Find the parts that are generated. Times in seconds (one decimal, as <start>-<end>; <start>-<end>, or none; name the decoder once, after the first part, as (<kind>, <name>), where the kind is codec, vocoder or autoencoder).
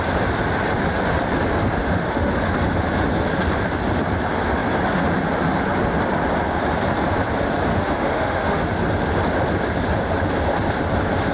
1.8-2.3 (autoencoder, DAC-VAE); 7.7-8.6